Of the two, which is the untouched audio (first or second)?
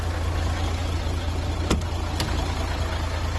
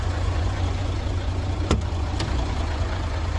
first